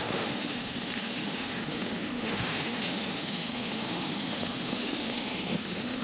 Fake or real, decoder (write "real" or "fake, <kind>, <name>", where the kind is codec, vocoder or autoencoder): fake, autoencoder, DAC-VAE